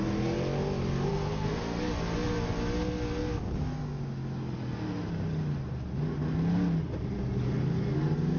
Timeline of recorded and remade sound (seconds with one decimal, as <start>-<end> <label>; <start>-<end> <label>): 0.0-1.1 recorded; 1.1-1.8 remade; 1.8-8.4 recorded